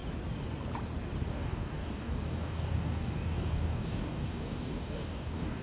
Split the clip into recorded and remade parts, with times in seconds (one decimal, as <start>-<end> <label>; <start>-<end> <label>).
0.0-1.3 recorded; 1.3-5.6 remade